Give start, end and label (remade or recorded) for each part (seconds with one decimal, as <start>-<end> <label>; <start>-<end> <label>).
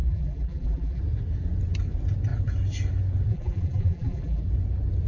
0.0-1.0 remade; 1.0-3.3 recorded; 3.3-4.4 remade; 4.4-5.1 recorded